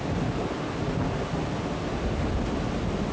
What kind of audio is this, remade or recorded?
recorded